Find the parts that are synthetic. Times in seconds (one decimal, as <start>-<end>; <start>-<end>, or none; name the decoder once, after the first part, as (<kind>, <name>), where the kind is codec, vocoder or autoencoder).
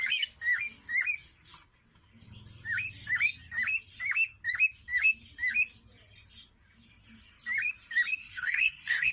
8.2-9.1 (codec, SNAC)